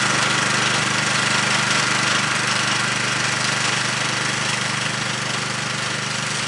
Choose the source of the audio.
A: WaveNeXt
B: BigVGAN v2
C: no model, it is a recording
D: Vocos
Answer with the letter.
C